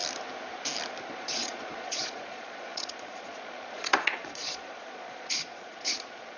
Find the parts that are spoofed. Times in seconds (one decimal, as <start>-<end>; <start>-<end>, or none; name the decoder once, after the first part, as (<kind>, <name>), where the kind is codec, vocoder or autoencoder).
1.1-6.4 (vocoder, Vocos)